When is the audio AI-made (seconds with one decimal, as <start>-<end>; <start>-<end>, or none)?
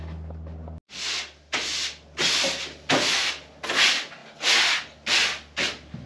none